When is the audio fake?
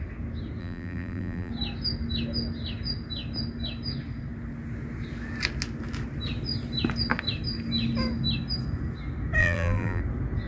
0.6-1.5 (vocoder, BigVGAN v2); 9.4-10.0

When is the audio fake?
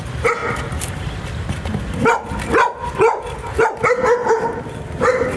4.2-5.4 (vocoder, BigVGAN v2)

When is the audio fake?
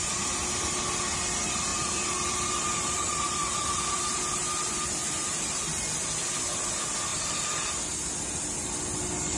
1.7-4.2 (vocoder, BigVGAN v2); 5.0-5.9; 7.1-7.7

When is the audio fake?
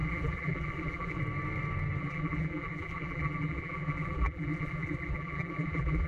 0.0-1.2 (vocoder, BigVGAN v2); 2.0-6.1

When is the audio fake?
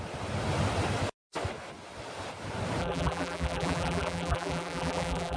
2.8-5.4 (vocoder, BigVGAN v2)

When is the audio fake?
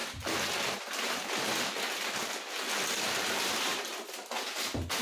none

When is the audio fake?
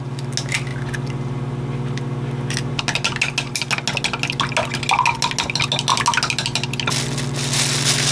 none